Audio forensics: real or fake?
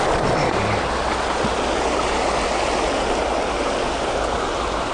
real